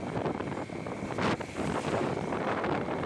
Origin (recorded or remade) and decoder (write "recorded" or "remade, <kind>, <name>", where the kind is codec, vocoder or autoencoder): recorded